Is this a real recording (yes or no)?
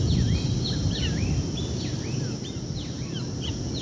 yes